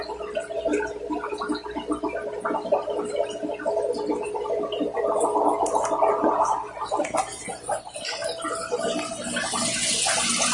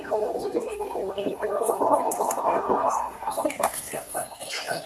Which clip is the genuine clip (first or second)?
first